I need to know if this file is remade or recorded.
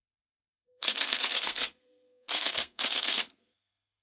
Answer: remade